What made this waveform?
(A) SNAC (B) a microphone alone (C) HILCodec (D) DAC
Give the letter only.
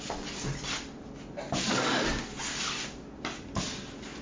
B